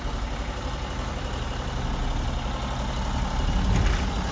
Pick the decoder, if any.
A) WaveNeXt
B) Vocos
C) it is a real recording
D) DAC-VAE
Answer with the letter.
C